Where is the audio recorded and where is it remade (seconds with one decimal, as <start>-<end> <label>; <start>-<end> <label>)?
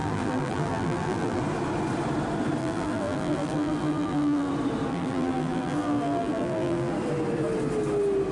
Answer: 0.0-1.4 remade; 1.4-2.6 recorded; 2.6-4.5 remade; 4.5-4.9 recorded; 4.9-6.9 remade; 6.9-8.3 recorded